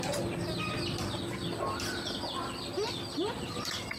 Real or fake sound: real